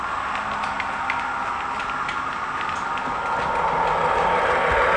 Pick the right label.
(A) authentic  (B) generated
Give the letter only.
A